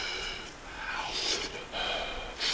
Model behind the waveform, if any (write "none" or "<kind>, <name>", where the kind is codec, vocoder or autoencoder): none